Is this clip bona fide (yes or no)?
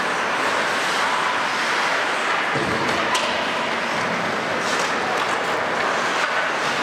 yes